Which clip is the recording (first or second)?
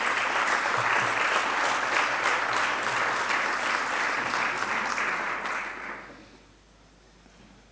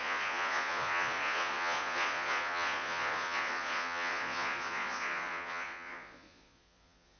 first